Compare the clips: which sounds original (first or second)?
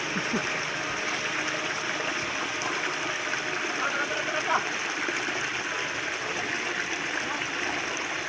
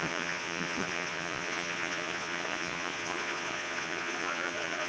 first